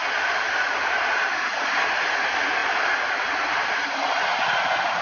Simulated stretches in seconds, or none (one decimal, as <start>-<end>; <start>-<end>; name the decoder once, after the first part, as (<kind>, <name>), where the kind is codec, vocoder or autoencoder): none